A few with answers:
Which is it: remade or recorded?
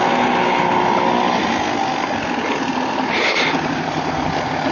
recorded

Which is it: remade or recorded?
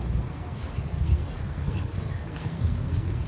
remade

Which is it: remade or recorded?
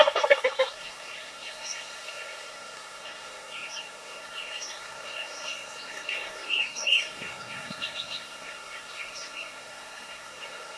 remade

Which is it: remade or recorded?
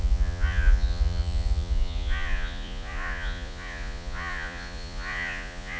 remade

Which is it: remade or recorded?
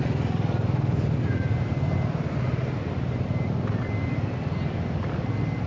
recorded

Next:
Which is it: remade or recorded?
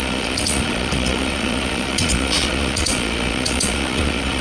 remade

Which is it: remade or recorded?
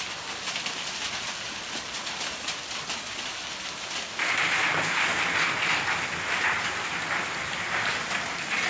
recorded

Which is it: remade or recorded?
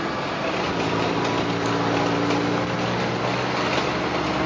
recorded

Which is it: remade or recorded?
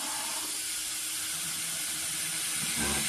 recorded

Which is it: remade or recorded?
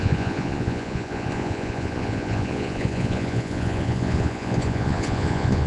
remade